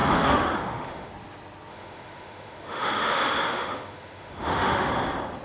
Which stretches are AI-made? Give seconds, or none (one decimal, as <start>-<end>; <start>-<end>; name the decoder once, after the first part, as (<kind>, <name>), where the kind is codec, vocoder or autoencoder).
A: 0.0-1.1 (autoencoder, DAC-VAE); 1.7-4.9

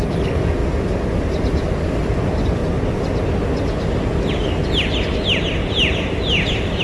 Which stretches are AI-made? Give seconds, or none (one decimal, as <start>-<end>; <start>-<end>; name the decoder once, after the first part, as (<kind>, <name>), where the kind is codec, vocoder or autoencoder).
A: 0.0-0.6 (vocoder, BigVGAN v2); 1.2-2.6

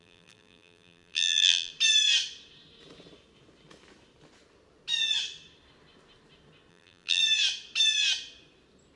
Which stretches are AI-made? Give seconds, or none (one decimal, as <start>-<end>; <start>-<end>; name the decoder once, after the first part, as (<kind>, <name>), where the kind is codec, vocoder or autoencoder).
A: 0.0-1.7 (vocoder, BigVGAN v2); 6.7-7.2

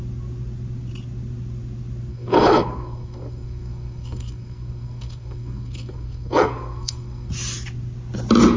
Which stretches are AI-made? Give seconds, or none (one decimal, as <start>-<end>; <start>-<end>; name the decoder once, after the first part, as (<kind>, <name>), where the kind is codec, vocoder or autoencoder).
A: 2.1-7.3 (codec, SNAC)